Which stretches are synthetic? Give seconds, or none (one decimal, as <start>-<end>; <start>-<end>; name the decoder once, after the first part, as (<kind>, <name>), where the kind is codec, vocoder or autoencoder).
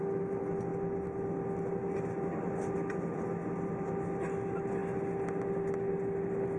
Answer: none